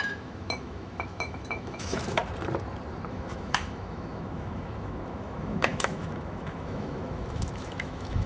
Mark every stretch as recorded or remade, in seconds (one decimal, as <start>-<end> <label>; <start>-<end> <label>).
0.0-2.2 remade; 2.2-3.1 recorded; 3.1-8.3 remade